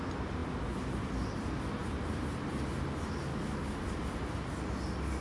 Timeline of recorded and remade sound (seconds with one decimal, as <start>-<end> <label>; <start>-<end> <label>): 0.0-3.3 recorded; 3.3-3.8 remade; 3.8-5.2 recorded